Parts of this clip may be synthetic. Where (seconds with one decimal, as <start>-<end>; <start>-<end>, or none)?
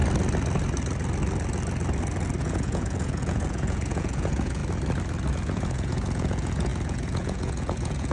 2.4-4.6; 5.3-8.1